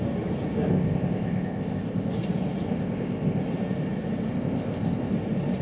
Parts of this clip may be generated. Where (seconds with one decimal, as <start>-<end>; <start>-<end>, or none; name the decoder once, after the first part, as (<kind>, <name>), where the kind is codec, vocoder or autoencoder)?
0.7-2.1 (codec, ZipCodec); 2.7-3.4; 4.3-5.1